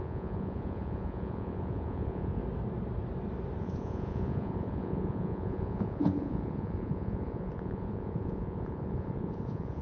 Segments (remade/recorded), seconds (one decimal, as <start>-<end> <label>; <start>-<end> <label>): 0.0-2.4 remade; 2.4-3.6 recorded; 3.6-9.8 remade